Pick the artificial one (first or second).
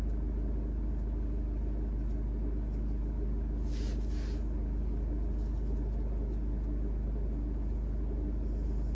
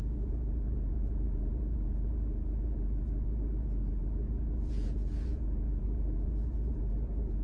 second